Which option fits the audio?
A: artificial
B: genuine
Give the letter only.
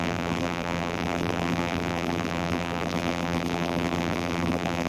A